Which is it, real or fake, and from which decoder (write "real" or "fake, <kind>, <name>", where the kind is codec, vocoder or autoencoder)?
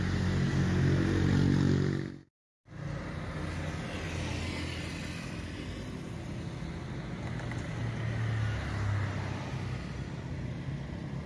real